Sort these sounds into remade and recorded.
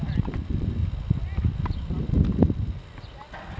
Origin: recorded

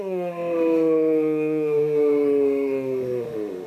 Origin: remade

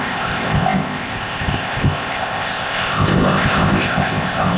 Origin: remade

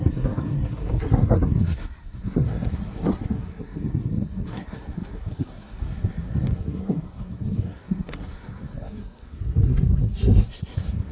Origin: remade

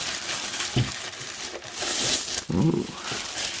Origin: recorded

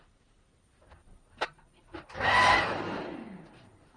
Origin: remade